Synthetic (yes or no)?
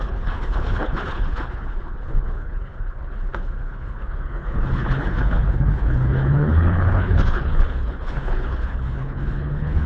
yes